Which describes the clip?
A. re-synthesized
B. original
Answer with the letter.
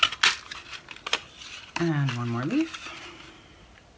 B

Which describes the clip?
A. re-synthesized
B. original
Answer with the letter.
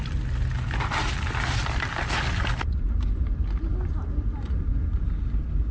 B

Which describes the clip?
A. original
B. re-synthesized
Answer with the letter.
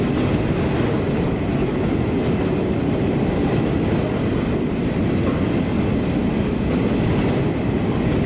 A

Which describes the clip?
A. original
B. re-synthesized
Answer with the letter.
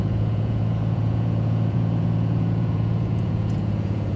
B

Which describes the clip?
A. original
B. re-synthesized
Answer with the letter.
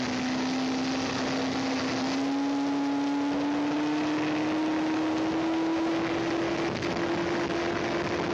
A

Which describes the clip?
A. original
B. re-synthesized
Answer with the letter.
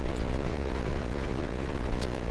B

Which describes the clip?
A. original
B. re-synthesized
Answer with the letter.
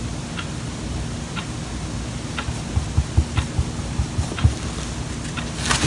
A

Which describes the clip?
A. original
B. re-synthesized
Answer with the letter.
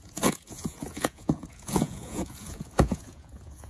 B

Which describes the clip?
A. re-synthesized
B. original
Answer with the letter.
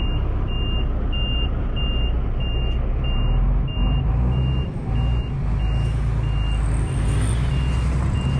B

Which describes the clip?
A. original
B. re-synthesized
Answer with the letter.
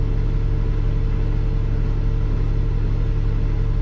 A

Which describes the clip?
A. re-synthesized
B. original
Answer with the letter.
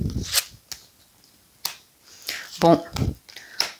B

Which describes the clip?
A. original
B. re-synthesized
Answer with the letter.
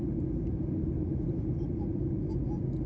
A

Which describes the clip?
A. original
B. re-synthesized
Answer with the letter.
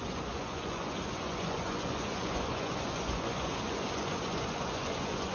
B